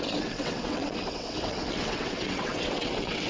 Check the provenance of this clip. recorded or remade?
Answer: remade